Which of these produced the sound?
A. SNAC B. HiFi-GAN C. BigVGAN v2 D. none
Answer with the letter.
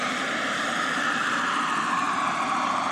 C